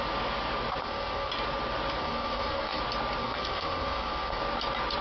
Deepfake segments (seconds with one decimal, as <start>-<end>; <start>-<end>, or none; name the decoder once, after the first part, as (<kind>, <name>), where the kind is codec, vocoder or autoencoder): 0.8-1.3 (codec, SNAC); 2.0-2.8; 3.2-4.4